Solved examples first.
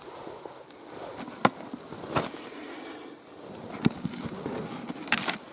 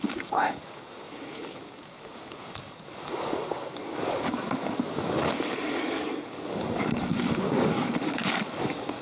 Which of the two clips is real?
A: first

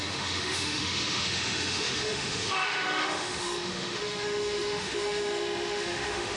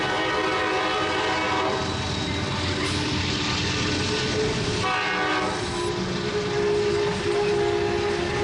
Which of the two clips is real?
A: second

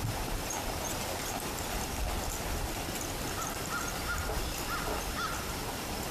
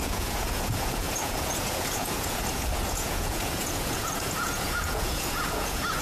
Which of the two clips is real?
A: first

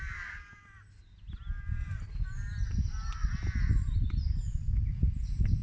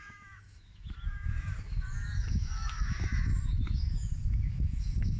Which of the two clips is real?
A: first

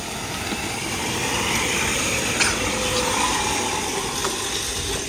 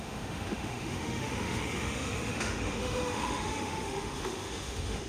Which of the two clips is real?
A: first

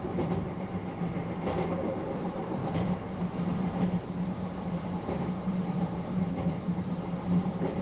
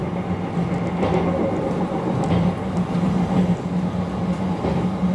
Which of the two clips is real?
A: second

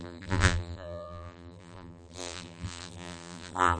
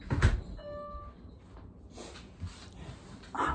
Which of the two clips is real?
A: second